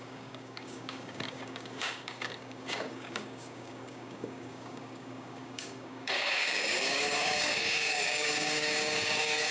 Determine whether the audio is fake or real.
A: fake